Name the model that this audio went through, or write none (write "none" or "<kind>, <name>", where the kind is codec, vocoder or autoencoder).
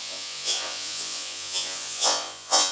vocoder, Vocos